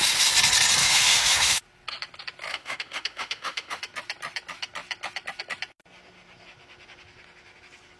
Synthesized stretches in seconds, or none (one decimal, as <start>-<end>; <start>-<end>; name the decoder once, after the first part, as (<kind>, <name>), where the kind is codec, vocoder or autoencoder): 0.8-1.6 (autoencoder, DAC-VAE); 2.5-3.8